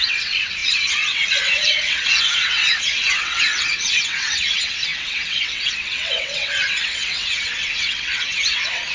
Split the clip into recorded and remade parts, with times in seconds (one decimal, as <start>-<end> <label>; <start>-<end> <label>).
0.0-8.9 remade